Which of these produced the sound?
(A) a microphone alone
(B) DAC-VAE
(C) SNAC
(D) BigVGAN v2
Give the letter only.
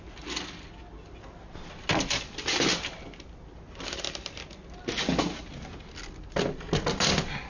A